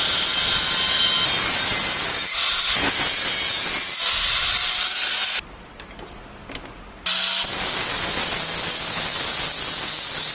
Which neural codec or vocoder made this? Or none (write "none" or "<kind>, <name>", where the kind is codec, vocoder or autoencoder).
none